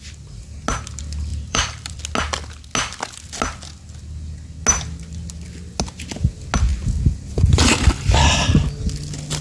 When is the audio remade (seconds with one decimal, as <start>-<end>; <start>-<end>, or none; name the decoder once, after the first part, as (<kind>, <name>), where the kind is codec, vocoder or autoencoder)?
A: 1.3-2.0 (vocoder, BigVGAN v2)